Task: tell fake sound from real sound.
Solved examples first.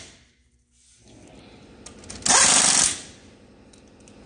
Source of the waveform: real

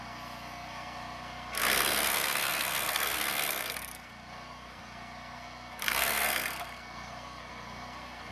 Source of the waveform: fake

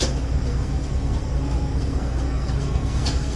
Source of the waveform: fake